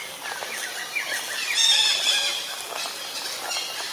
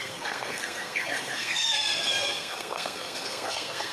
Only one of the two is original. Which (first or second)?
first